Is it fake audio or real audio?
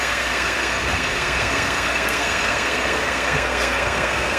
fake